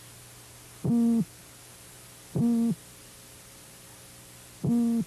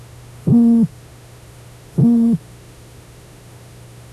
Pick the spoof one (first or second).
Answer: second